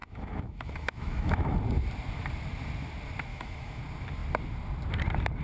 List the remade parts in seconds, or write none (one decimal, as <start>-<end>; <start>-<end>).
0.0-1.6; 3.3-3.8